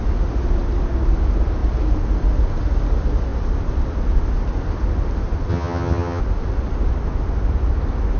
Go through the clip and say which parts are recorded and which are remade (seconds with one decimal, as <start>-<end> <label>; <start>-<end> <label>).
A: 0.0-5.5 recorded; 5.5-6.2 remade; 6.2-8.2 recorded